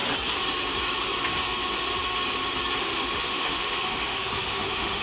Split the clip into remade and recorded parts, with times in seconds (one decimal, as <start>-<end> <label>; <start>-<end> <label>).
0.0-2.8 recorded; 2.8-5.0 remade